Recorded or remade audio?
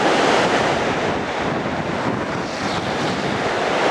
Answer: recorded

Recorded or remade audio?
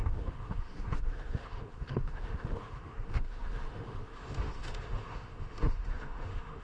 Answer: remade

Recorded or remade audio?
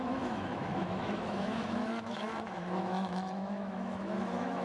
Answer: remade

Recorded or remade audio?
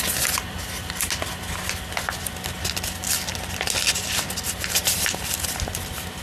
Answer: recorded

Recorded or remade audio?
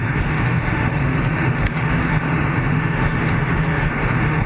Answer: remade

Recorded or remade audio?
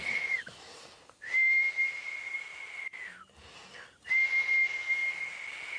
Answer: recorded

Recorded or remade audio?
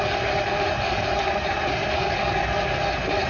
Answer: recorded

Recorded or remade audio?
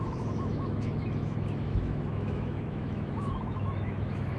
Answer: remade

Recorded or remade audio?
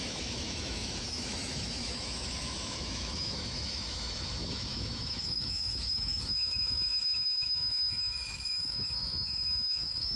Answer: remade